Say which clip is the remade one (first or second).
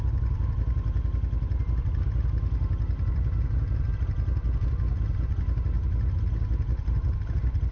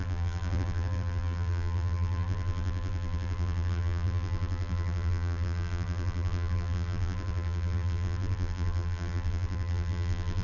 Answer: second